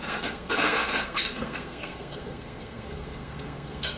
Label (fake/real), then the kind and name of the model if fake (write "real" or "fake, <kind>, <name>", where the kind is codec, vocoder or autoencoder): fake, codec, SNAC